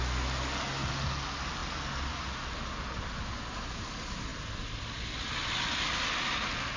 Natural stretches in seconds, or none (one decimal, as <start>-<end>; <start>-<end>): 0.0-6.8